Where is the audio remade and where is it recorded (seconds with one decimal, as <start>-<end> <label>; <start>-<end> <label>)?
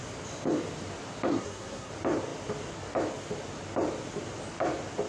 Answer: 0.0-1.3 recorded; 1.3-1.9 remade; 1.9-5.1 recorded